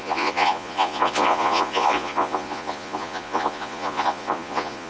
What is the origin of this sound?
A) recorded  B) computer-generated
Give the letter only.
B